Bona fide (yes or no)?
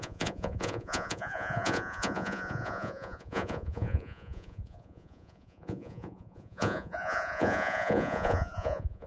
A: no